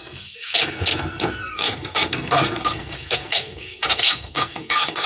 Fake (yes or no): yes